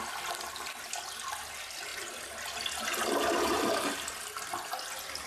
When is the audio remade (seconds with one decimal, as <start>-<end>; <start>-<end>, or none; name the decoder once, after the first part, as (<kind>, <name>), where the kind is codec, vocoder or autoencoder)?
none